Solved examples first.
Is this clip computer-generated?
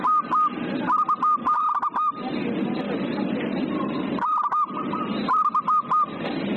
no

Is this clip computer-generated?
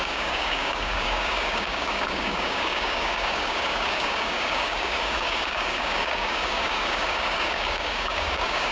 yes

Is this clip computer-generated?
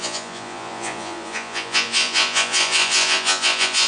yes